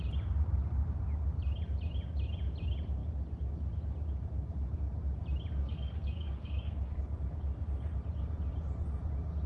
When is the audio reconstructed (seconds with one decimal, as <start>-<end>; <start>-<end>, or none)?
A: 5.6-7.0

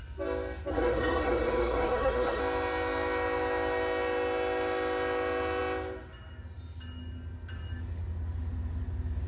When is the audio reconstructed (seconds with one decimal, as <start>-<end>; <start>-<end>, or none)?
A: 0.7-2.4

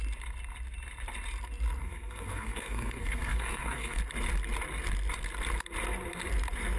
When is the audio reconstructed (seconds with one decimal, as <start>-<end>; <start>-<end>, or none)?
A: 1.8-4.0

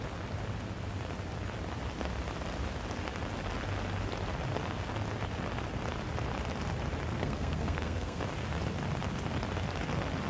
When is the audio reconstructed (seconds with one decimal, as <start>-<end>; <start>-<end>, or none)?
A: 7.1-8.2

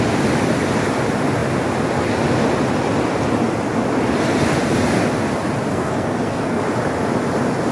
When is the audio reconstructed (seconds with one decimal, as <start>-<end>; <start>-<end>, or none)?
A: 5.7-6.6

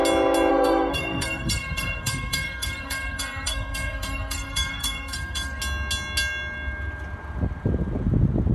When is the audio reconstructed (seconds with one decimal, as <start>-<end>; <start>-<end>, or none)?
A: 0.5-5.6

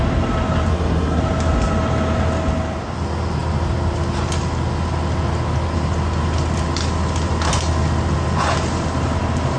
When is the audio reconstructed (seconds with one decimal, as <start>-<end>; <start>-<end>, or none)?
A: 0.7-1.2